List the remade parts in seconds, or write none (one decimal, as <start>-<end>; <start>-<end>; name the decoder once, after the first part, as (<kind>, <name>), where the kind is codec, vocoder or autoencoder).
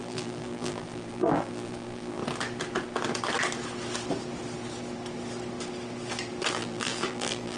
0.0-2.2 (vocoder, BigVGAN v2); 6.5-7.6